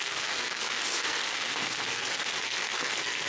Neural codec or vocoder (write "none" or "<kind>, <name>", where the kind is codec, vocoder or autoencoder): codec, SNAC